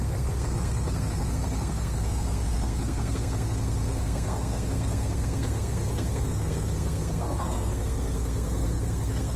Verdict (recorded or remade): remade